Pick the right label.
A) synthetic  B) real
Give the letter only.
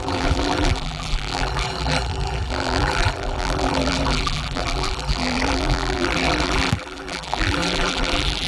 A